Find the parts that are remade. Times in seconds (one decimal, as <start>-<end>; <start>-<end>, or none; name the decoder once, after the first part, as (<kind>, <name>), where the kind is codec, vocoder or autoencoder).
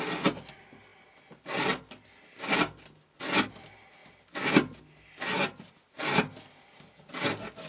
none